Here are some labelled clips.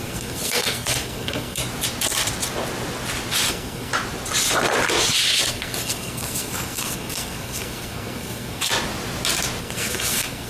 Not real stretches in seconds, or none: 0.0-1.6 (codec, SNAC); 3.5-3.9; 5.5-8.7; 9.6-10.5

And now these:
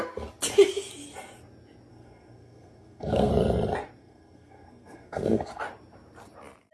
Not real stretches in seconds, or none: 1.9-3.3 (codec, SNAC); 4.0-5.6

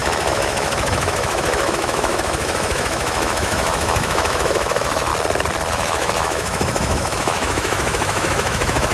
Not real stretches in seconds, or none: 0.0-5.1 (autoencoder, DAC-VAE); 5.7-8.9

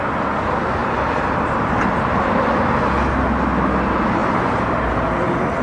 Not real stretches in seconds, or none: 0.8-2.2 (vocoder, BigVGAN v2); 4.2-4.9

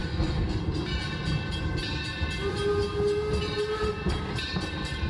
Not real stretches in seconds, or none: 0.0-0.6 (codec, SNAC)